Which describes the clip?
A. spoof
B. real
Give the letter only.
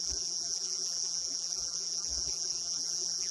A